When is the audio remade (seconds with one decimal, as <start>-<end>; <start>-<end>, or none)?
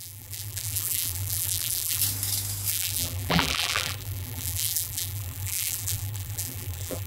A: 0.0-2.0; 2.7-7.1